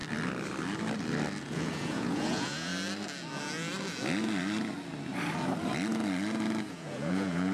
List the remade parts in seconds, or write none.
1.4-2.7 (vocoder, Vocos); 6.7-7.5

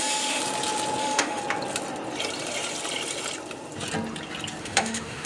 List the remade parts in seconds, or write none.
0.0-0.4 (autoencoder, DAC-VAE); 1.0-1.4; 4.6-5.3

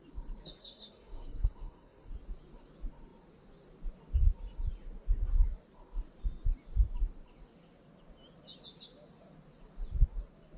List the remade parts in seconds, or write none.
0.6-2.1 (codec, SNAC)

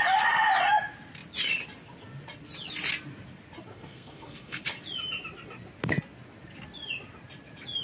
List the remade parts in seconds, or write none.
3.7-4.6 (codec, SNAC)

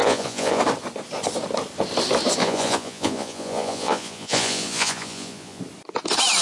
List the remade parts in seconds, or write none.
0.0-0.6 (vocoder, Vocos); 2.4-5.6

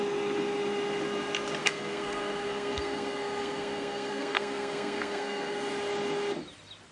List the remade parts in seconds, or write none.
1.6-5.7 (codec, SNAC)

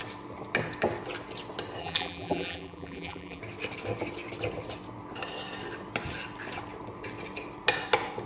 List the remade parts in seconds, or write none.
1.8-3.4 (vocoder, BigVGAN v2)

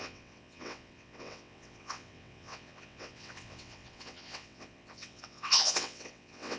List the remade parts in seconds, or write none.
0.0-6.6 (vocoder, WaveNeXt)